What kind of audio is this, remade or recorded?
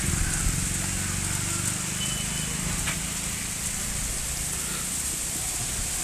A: recorded